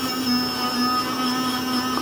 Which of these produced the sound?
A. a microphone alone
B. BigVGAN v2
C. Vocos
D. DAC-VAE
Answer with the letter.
A